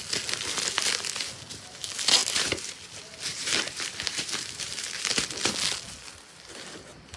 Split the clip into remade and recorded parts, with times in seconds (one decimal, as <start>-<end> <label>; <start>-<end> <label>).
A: 0.0-2.2 recorded; 2.2-2.7 remade; 2.7-3.3 recorded; 3.3-5.2 remade; 5.2-7.2 recorded